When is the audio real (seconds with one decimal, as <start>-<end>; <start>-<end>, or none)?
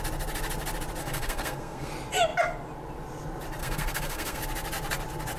0.0-1.0; 1.9-3.6; 4.4-5.4